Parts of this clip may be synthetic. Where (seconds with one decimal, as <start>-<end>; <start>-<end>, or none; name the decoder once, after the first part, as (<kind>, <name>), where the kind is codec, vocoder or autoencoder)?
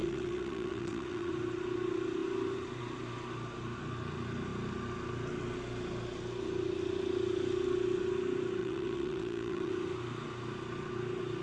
0.0-1.3 (vocoder, WaveNeXt); 8.6-9.7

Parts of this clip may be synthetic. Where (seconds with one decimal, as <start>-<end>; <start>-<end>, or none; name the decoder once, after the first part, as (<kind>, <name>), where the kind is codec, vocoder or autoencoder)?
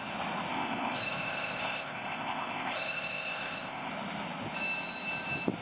0.5-3.9 (codec, ZipCodec)